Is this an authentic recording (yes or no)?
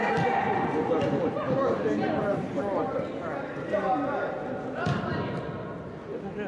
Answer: yes